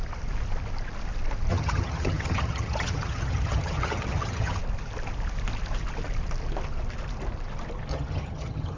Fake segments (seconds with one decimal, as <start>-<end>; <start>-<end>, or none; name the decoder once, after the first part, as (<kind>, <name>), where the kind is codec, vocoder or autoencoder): 1.5-4.6 (vocoder, HiFi-GAN); 7.9-8.8